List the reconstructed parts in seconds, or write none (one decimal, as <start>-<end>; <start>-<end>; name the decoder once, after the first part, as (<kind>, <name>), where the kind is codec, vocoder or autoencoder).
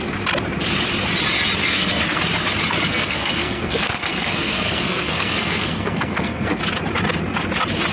1.6-2.2 (codec, SNAC); 2.9-6.6